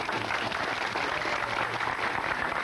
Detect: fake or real real